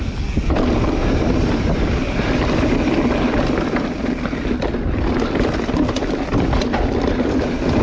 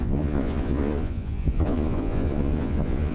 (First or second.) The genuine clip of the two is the first